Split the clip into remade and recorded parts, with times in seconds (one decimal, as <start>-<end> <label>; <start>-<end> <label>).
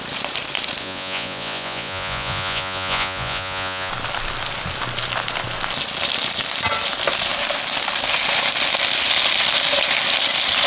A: 0.0-0.8 recorded; 0.8-3.9 remade; 3.9-10.7 recorded